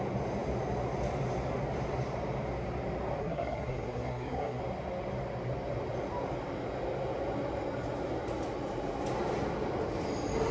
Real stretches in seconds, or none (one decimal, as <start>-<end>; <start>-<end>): 0.0-3.2; 4.6-10.5